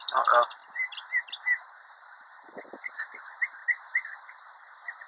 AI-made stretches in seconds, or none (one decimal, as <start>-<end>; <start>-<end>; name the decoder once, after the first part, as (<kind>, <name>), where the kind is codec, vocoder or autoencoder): none